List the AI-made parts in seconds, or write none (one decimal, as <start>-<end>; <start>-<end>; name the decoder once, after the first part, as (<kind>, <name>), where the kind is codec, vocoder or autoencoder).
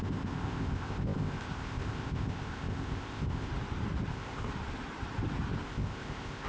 0.0-3.5 (codec, ZipCodec); 4.1-4.5; 5.7-6.5